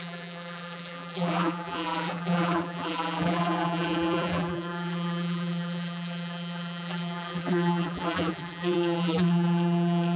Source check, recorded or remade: remade